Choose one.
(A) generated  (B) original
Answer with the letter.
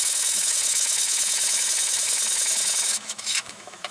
A